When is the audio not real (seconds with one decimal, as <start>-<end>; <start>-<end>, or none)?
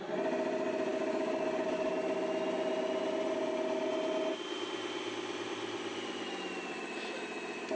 0.9-1.9